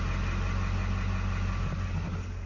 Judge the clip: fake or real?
real